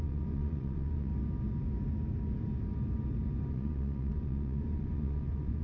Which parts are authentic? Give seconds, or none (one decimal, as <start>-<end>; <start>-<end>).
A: 1.1-3.5